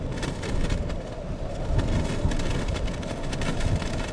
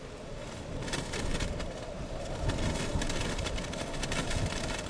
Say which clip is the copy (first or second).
second